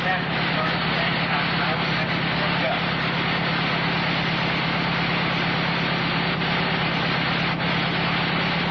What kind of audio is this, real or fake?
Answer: real